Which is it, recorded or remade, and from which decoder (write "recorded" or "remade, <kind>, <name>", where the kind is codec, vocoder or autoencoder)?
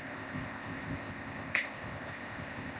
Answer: remade, codec, ZipCodec